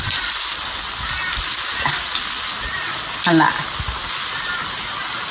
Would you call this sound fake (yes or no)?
no